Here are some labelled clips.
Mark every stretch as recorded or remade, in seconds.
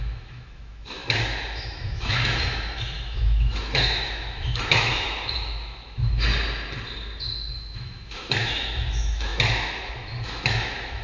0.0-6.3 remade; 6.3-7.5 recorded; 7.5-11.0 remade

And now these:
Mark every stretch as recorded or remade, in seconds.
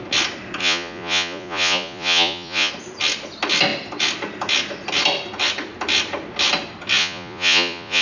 0.0-0.6 recorded; 0.6-2.7 remade; 2.7-7.0 recorded; 7.0-8.0 remade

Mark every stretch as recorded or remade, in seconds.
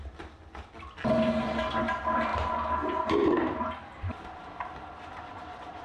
0.0-5.8 recorded